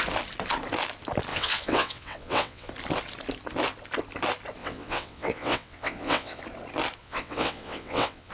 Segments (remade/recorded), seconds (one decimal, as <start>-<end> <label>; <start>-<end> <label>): 0.0-1.3 recorded; 1.3-2.7 remade; 2.7-4.6 recorded; 4.6-6.4 remade; 6.4-7.0 recorded; 7.0-8.3 remade